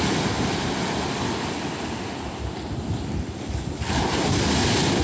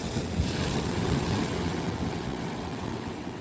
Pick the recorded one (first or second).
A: first